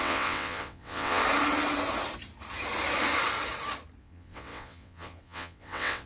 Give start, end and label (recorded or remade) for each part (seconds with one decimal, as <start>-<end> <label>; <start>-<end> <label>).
0.0-1.2 remade; 1.2-4.0 recorded; 4.0-6.1 remade